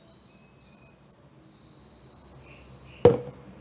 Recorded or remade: recorded